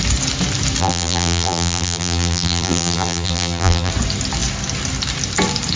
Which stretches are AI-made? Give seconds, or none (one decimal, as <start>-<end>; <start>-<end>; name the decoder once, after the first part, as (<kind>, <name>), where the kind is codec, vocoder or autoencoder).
0.8-3.9 (vocoder, BigVGAN v2)